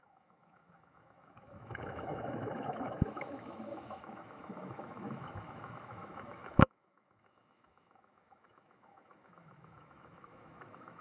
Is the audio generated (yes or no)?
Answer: yes